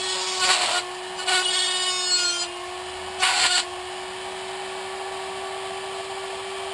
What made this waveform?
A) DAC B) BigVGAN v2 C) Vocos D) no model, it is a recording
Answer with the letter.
D